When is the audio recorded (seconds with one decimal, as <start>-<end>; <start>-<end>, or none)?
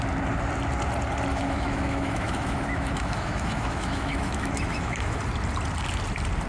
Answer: 0.0-1.3; 5.2-6.5